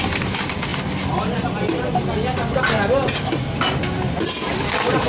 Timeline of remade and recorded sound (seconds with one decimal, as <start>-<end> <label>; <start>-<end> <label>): 0.0-5.1 recorded